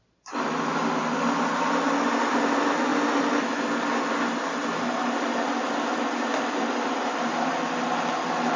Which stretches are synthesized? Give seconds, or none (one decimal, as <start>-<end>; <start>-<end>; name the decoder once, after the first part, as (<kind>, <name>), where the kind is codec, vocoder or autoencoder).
none